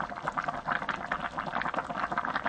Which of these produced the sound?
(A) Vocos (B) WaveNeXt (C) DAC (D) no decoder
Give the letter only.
D